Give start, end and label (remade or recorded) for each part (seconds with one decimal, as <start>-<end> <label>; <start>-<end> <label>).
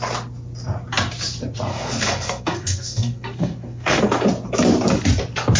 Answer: 0.0-1.7 recorded; 1.7-4.0 remade; 4.0-5.6 recorded